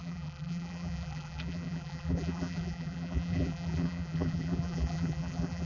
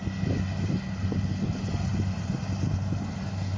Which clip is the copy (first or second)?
first